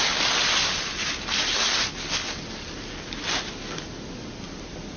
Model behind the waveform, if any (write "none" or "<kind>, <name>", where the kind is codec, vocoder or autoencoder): none